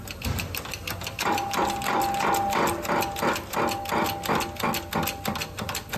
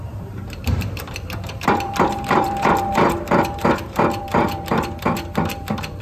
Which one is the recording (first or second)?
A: first